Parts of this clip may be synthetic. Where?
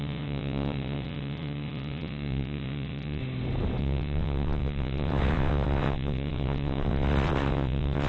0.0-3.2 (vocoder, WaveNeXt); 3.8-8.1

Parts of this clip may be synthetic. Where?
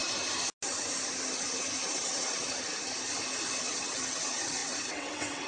1.9-2.7 (vocoder, WaveNeXt); 3.6-5.5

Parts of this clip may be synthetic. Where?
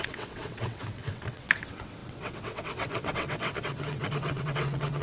0.0-5.0 (vocoder, WaveNeXt)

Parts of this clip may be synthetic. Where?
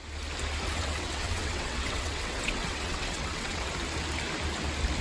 0.7-3.7 (vocoder, WaveNeXt)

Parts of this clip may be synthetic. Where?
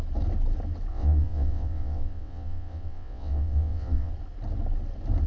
0.9-4.1 (vocoder, WaveNeXt)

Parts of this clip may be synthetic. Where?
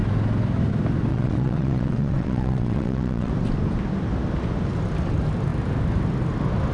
1.1-3.3 (vocoder, WaveNeXt)